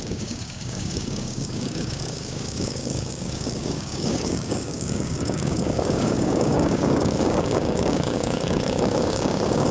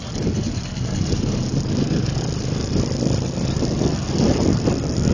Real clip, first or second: second